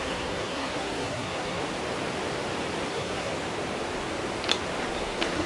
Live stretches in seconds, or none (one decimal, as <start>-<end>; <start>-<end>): 1.6-2.9; 3.3-4.9

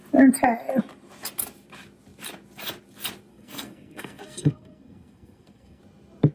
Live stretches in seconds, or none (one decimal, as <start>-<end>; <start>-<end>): 0.0-3.3; 5.8-6.3

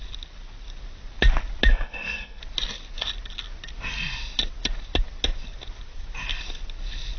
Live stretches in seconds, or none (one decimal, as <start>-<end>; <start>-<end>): 0.0-1.7; 2.4-7.2